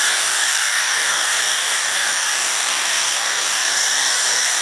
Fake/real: fake